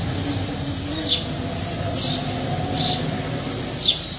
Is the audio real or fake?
real